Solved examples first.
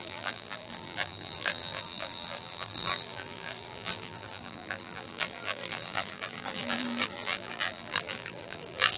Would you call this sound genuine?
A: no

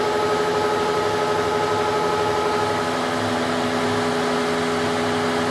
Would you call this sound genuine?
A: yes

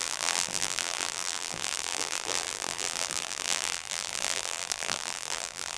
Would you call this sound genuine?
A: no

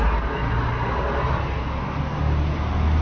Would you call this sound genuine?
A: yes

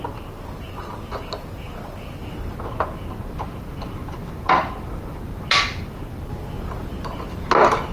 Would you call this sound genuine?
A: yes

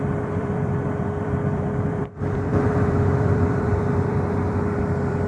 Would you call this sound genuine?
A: no